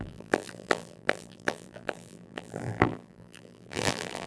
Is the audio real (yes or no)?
no